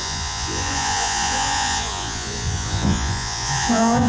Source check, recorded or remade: remade